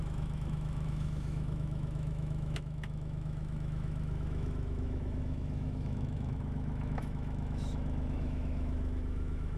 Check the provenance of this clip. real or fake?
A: fake